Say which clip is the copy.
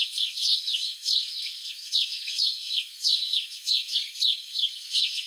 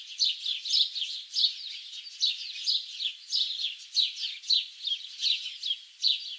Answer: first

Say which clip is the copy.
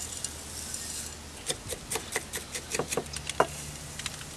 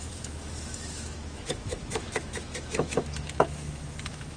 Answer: second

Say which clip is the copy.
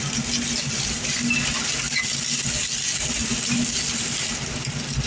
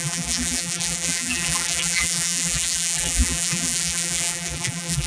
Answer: second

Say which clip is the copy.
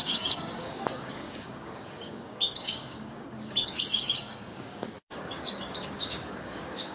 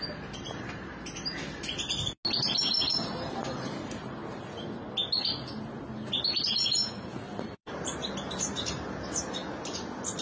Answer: first